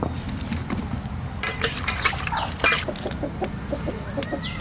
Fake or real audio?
real